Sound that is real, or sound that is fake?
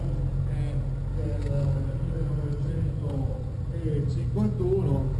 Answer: real